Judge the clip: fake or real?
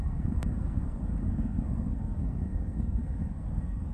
fake